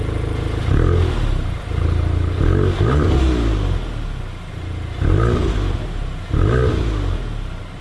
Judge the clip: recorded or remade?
recorded